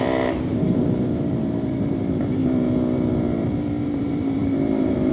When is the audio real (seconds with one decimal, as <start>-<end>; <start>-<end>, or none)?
none